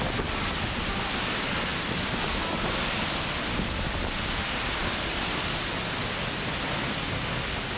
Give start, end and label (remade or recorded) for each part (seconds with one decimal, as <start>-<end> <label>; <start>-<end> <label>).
0.0-7.8 recorded